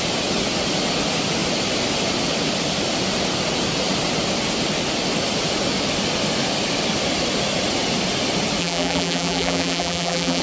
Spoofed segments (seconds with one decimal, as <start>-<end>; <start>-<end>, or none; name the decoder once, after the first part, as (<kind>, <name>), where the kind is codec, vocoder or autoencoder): 8.6-10.4 (vocoder, BigVGAN v2)